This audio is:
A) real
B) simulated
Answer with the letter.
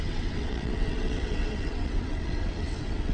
B